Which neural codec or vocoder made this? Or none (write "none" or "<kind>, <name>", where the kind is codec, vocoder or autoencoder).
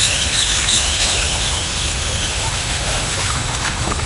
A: autoencoder, DAC-VAE